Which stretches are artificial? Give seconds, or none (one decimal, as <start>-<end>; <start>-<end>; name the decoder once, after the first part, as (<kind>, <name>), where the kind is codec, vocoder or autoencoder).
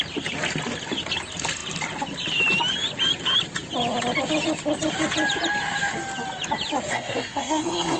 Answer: 6.9-8.0 (codec, SNAC)